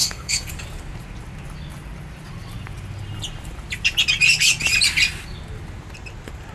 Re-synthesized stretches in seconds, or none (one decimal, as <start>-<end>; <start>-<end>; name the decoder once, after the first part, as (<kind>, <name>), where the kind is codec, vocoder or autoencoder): 0.0-0.5 (codec, SNAC)